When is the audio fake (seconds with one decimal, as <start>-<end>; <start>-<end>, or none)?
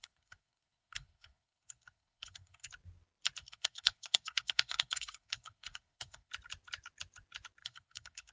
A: 0.0-2.7; 3.4-6.3; 7.6-8.3